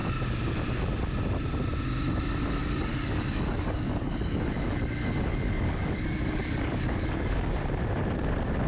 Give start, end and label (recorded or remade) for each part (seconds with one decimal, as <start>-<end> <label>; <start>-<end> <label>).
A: 0.0-2.6 recorded; 2.6-7.6 remade; 7.6-8.7 recorded